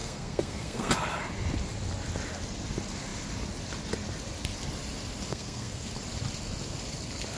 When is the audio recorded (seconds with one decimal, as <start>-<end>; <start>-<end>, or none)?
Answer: 0.9-5.3; 5.9-7.4